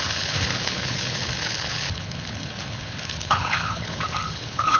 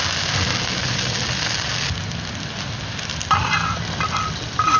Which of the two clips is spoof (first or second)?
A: first